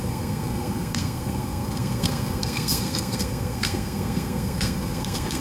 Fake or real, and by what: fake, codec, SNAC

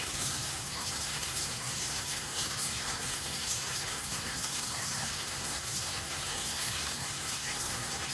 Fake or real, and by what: fake, codec, SNAC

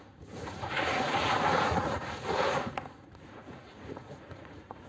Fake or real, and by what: fake, vocoder, Vocos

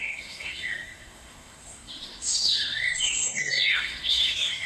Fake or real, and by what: fake, codec, SNAC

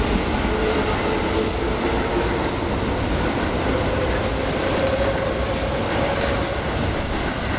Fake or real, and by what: real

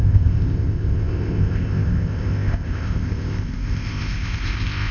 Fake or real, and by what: fake, codec, ZipCodec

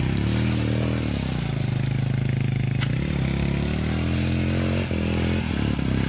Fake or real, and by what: real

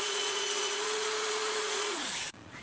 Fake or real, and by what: fake, vocoder, Vocos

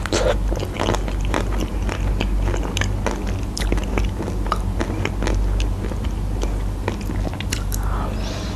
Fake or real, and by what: real